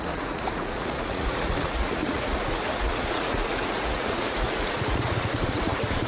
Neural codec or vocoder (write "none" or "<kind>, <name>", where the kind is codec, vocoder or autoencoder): vocoder, Vocos